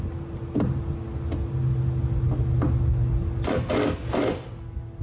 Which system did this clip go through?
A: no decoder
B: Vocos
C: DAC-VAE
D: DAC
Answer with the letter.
A